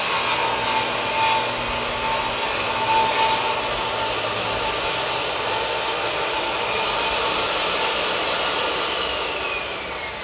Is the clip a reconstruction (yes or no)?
no